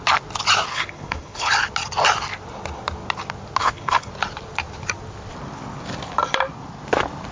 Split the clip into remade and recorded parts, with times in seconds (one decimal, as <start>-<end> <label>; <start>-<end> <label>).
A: 0.0-0.7 recorded; 0.7-1.5 remade; 1.5-3.6 recorded; 3.6-4.1 remade; 4.1-7.3 recorded